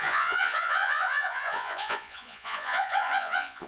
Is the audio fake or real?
fake